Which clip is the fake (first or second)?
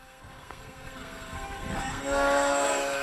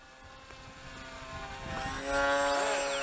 first